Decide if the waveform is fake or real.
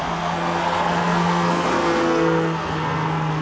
fake